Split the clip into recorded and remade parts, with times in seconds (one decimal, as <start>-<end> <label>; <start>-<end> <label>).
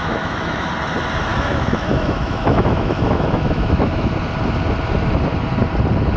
0.0-0.7 remade; 0.7-1.3 recorded; 1.3-4.1 remade; 4.1-6.2 recorded